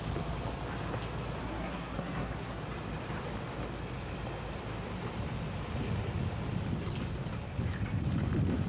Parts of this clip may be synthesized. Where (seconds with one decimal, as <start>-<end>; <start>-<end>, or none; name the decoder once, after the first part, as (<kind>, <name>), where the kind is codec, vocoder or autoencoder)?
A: 1.4-2.6 (codec, SNAC)